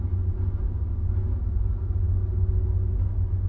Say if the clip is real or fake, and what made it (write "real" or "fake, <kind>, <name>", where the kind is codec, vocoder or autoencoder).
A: real